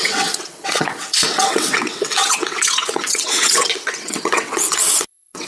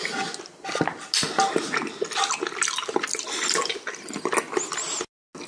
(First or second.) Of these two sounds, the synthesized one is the first